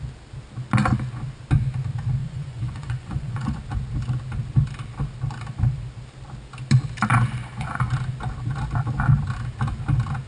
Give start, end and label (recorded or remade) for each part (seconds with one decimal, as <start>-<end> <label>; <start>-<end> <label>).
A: 0.0-2.2 recorded; 2.2-3.6 remade; 3.6-7.1 recorded; 7.1-7.9 remade; 7.9-10.3 recorded